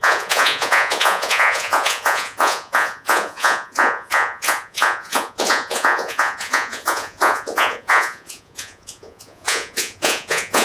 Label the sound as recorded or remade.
remade